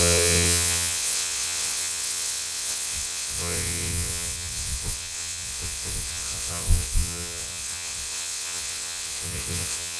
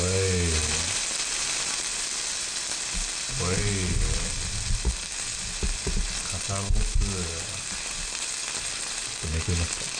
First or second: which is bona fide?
second